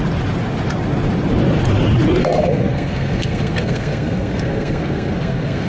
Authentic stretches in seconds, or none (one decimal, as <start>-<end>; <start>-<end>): 0.0-2.2